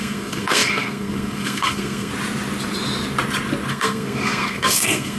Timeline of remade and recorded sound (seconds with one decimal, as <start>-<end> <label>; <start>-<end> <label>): 0.0-2.1 remade; 2.1-3.7 recorded; 3.7-5.2 remade